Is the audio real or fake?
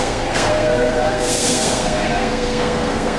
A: fake